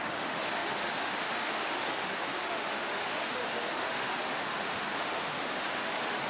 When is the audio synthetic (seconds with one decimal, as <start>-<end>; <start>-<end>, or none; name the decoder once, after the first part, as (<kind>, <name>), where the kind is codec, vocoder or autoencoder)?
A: 0.0-6.3 (autoencoder, DAC-VAE)